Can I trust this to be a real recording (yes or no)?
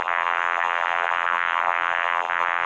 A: no